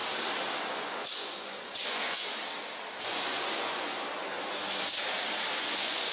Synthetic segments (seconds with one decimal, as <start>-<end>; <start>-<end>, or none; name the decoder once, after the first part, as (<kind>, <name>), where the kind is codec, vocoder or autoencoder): 0.7-2.3 (vocoder, Vocos); 3.0-3.9; 5.6-6.1